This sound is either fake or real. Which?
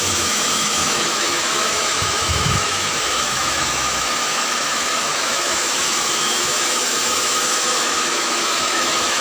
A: fake